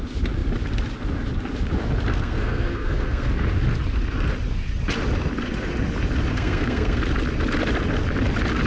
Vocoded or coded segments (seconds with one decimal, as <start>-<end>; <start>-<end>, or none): 2.1-3.3; 6.3-7.0